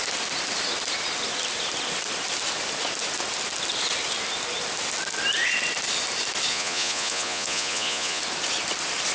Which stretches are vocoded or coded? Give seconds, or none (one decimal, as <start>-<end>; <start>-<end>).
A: 6.5-8.2